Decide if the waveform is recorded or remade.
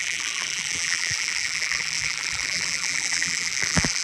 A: remade